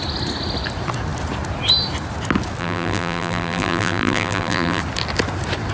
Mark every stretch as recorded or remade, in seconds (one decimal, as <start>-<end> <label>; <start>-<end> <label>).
0.0-2.6 recorded; 2.6-4.8 remade; 4.8-5.7 recorded